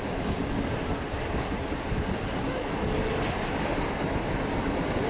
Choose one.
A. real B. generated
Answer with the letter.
A